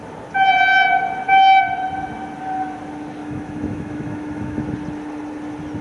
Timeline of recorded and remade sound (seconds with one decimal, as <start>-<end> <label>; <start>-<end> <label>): 0.0-3.2 recorded; 3.2-4.6 remade; 4.6-5.8 recorded

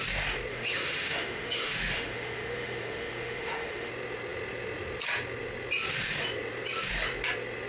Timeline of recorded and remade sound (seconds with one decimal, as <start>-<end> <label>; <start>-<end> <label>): 0.0-0.5 recorded; 0.5-3.9 remade; 3.9-7.7 recorded

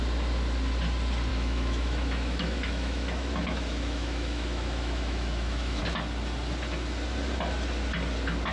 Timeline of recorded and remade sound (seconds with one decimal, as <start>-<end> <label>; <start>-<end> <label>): 0.0-1.3 recorded; 1.3-5.8 remade; 5.8-8.5 recorded

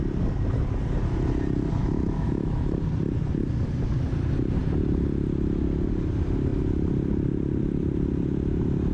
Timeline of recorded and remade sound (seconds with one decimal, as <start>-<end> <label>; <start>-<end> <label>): 0.0-1.8 recorded; 1.8-2.8 remade; 2.8-8.9 recorded